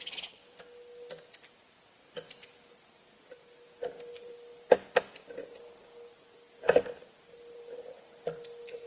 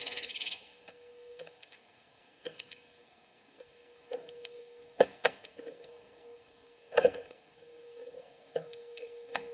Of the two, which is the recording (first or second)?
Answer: first